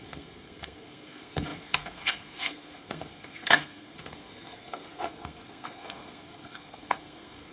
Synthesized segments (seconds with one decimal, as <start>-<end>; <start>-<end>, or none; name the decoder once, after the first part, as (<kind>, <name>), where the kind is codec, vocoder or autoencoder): 0.0-7.5 (codec, SNAC)